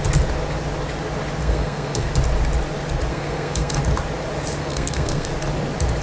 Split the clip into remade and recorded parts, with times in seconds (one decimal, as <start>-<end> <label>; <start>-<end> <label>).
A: 0.0-1.4 recorded; 1.4-2.1 remade; 2.1-3.1 recorded; 3.1-3.8 remade; 3.8-4.6 recorded; 4.6-5.3 remade; 5.3-6.0 recorded